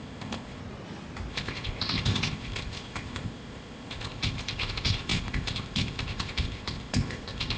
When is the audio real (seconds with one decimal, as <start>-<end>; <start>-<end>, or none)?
0.6-1.3